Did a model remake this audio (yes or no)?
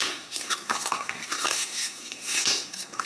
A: yes